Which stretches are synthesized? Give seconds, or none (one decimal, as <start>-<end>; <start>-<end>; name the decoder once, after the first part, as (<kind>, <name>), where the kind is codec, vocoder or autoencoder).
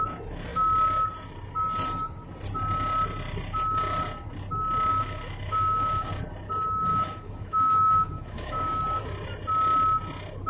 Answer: 4.9-6.1 (autoencoder, DAC-VAE); 6.9-8.8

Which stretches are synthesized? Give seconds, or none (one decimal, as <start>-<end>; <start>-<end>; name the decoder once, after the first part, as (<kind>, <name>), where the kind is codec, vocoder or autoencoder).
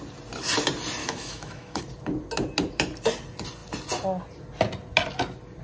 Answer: 1.0-1.8 (autoencoder, DAC-VAE)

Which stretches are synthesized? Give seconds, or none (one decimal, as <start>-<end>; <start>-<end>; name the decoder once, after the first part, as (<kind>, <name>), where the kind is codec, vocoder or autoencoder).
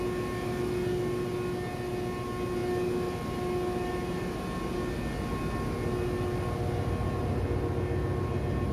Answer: none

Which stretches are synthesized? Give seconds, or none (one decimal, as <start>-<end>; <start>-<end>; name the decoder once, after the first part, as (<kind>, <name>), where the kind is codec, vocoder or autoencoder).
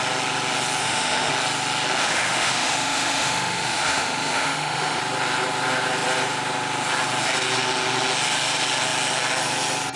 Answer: 0.8-1.3 (autoencoder, DAC-VAE); 2.0-5.0